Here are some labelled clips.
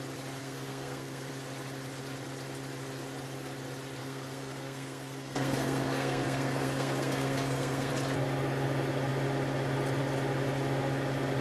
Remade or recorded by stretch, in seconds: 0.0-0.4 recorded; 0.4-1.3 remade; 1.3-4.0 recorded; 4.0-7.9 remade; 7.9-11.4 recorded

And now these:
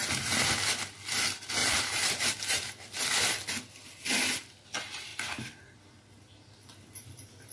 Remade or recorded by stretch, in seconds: 0.0-1.6 recorded; 1.6-2.7 remade; 2.7-7.5 recorded

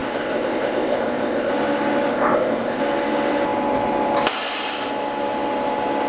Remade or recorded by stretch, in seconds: 0.0-1.5 remade; 1.5-2.1 recorded; 2.1-2.8 remade; 2.8-6.1 recorded